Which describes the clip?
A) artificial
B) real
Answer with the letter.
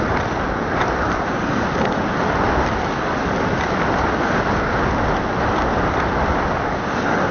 B